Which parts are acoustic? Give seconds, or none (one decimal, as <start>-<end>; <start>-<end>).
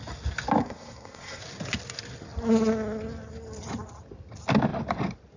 0.0-0.6; 1.4-5.4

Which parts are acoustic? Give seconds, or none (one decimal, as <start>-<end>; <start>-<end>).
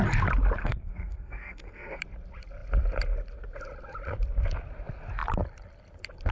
0.0-0.6; 2.0-6.3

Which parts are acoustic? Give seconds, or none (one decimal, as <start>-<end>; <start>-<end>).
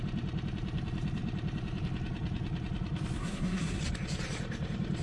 0.0-3.2; 3.8-5.0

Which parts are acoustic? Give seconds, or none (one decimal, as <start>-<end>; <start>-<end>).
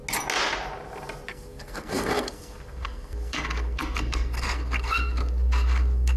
0.0-1.3